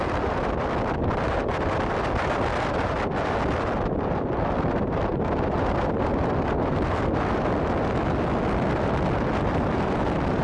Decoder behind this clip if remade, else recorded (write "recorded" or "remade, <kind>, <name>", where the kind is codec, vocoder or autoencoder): recorded